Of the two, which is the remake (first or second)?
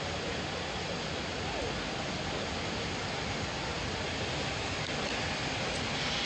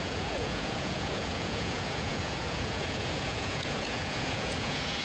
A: second